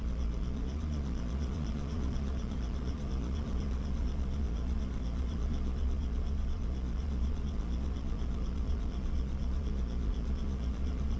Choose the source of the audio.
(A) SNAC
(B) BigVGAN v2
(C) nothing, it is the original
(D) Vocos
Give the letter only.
D